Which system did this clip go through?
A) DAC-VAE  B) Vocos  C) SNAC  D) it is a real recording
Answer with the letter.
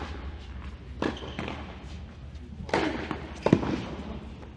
D